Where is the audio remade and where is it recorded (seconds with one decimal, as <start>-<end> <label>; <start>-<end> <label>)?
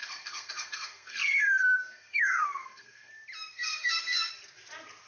0.0-3.1 remade; 3.1-3.5 recorded; 3.5-4.3 remade; 4.3-5.1 recorded